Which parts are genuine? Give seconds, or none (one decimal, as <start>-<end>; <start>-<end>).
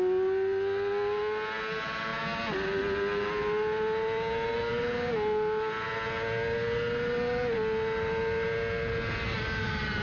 0.0-10.0